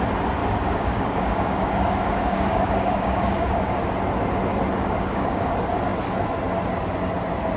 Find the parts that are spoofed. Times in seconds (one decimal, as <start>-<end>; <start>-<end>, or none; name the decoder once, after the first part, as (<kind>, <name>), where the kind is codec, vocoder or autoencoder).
0.4-3.7 (codec, DAC); 4.8-5.5